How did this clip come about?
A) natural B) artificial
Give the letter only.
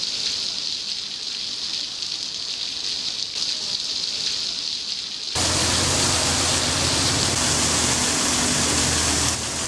A